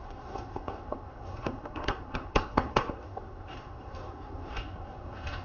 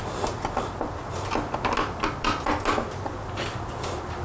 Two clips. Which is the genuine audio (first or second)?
second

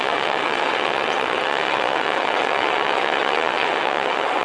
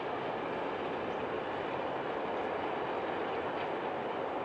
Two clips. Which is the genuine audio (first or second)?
second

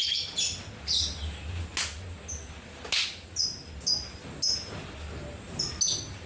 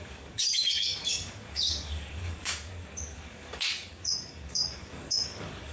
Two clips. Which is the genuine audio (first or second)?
first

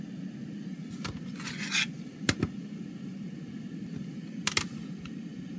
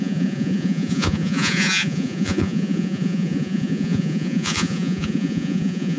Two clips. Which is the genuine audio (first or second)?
first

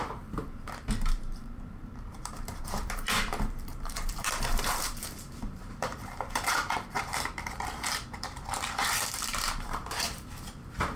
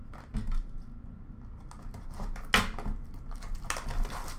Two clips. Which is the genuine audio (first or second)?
second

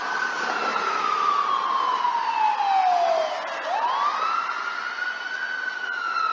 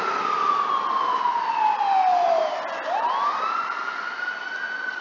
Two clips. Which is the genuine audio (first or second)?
first